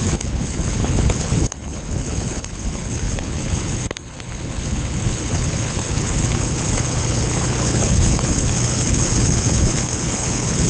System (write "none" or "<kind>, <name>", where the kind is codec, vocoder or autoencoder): codec, HILCodec